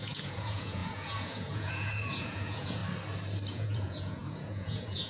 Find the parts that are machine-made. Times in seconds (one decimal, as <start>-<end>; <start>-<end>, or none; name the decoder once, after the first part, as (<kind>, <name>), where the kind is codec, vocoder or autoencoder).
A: 0.0-2.8 (vocoder, Vocos); 3.5-5.1